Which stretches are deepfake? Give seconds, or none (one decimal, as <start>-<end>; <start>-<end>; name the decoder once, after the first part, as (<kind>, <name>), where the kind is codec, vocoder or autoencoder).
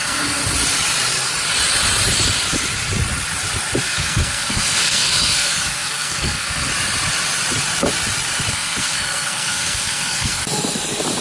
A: 0.0-0.4 (codec, SNAC); 3.8-6.7; 8.5-10.4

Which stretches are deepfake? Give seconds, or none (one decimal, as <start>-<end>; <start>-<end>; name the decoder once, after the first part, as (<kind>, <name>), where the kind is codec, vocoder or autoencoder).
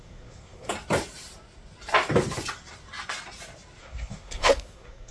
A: 0.0-0.7 (codec, SNAC); 3.8-5.1